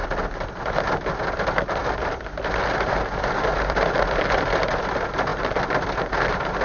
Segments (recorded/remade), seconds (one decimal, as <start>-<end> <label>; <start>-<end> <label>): 0.0-1.0 remade; 1.0-1.8 recorded; 1.8-4.7 remade; 4.7-6.6 recorded